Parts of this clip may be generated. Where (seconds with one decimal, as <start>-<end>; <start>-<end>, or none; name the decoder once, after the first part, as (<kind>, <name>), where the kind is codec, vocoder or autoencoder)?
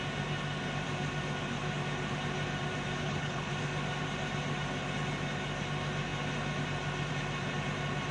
3.0-3.5 (codec, HILCodec)